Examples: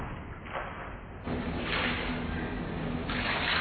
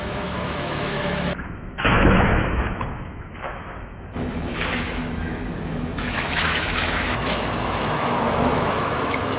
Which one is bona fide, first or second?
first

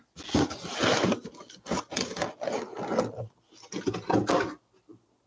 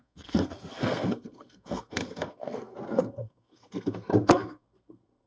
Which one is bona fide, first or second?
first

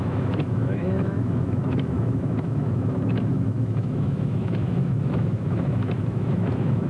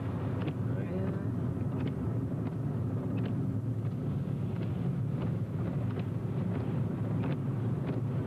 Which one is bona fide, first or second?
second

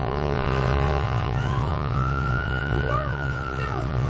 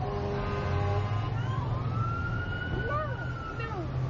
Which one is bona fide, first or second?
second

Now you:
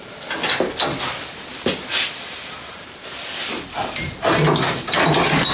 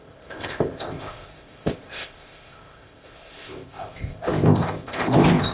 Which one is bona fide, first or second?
first